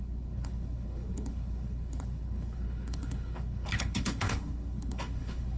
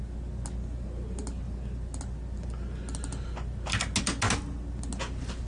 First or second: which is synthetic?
first